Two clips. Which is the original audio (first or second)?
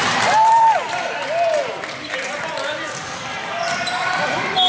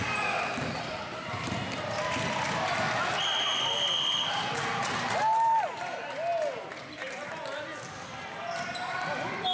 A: second